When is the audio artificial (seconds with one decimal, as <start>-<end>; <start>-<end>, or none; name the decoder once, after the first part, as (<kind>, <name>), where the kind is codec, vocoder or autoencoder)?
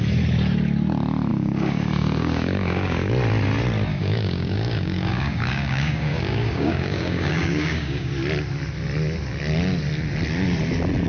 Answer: 1.3-3.1 (codec, DAC); 3.9-8.1